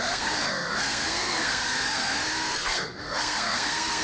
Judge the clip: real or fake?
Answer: fake